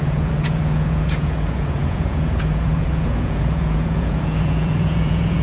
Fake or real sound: fake